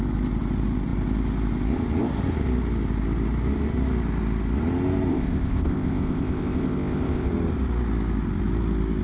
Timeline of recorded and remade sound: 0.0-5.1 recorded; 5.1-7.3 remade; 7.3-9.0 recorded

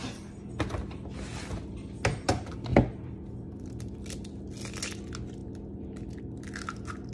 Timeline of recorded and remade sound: 0.0-2.7 recorded; 2.7-4.5 remade; 4.5-7.1 recorded

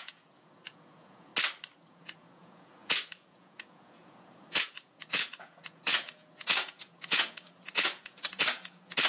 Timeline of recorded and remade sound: 0.0-1.3 remade; 1.3-1.9 recorded; 1.9-9.1 remade

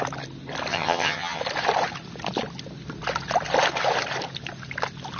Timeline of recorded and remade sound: 0.0-0.7 recorded; 0.7-1.4 remade; 1.4-5.2 recorded

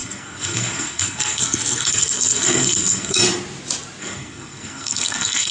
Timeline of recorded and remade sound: 0.0-3.2 remade; 3.2-4.0 recorded; 4.0-5.5 remade

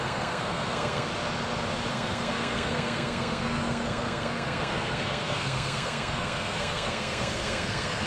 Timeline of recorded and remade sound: 0.0-1.1 remade; 1.1-1.9 recorded; 1.9-8.1 remade

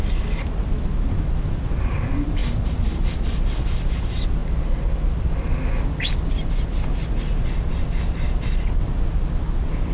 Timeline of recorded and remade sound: 0.0-9.9 recorded

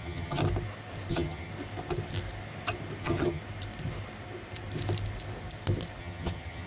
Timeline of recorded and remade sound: 0.0-0.4 remade; 0.4-1.1 recorded; 1.1-1.5 remade; 1.5-3.0 recorded; 3.0-3.4 remade; 3.4-6.0 recorded; 6.0-6.7 remade